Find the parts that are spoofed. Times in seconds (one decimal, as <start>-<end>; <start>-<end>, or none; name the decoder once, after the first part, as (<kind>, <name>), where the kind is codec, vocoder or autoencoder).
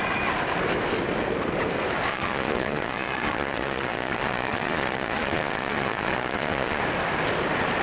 2.1-6.8 (vocoder, Vocos)